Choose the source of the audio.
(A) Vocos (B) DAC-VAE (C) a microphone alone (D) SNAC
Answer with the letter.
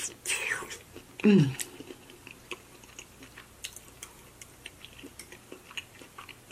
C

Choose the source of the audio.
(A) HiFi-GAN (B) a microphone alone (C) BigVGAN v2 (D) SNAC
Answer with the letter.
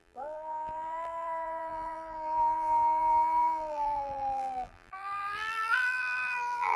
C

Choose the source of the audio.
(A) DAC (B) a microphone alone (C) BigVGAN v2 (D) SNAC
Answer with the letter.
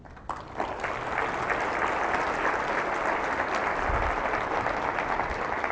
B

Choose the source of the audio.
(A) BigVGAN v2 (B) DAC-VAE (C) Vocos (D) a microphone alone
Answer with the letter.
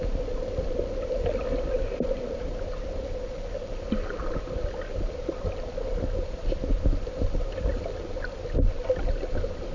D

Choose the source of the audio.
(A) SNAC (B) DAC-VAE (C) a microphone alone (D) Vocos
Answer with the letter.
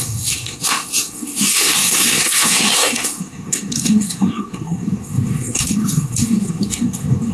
A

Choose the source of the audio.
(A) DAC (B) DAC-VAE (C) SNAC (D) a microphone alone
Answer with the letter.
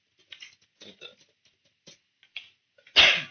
D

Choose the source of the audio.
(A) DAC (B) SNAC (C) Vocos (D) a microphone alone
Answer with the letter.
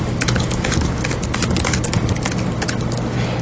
D